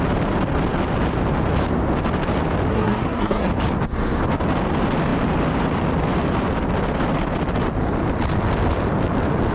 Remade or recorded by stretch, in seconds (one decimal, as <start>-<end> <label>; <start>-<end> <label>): 0.0-2.7 recorded; 2.7-3.5 remade; 3.5-9.5 recorded